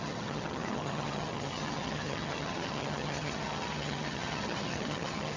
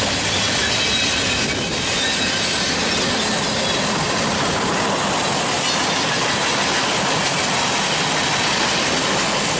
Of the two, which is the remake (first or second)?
first